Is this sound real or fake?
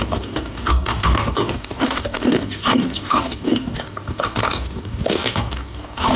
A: fake